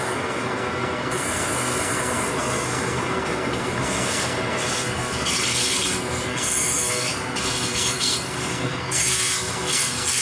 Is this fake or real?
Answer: fake